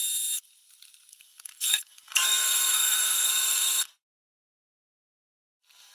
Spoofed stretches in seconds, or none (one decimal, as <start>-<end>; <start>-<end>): 1.1-3.9

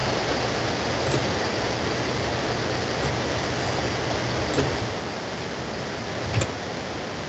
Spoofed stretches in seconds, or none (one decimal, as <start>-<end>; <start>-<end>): none

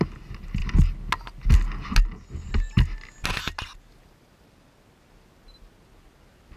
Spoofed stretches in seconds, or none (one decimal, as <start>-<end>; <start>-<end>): none

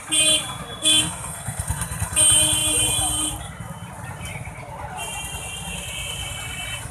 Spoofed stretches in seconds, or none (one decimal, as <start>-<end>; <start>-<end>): 0.8-2.2